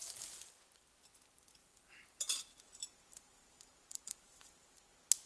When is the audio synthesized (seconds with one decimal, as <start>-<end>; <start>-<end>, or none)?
1.6-4.8